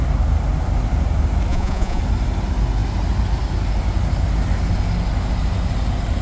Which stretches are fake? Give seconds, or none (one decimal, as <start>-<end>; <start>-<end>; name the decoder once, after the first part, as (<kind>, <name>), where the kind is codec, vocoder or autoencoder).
1.5-2.0 (vocoder, Vocos)